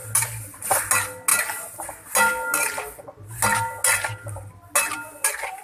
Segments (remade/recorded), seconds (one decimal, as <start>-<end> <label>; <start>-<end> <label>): 0.0-5.6 recorded